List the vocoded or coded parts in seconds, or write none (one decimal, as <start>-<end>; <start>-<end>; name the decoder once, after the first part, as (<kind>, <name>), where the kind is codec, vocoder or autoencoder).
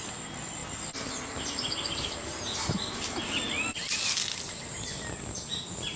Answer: none